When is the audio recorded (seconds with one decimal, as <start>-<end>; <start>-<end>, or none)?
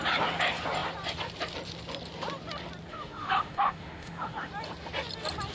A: 0.0-2.9; 4.5-5.5